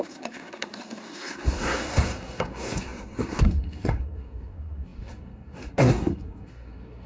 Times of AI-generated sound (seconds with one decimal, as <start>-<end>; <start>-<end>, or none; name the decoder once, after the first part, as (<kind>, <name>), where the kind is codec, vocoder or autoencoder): 0.0-7.1 (codec, SNAC)